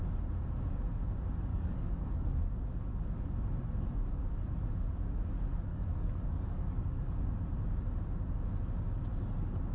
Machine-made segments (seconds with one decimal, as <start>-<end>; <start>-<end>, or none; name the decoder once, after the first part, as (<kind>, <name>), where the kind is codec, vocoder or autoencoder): 1.5-2.4 (codec, DAC); 5.7-7.0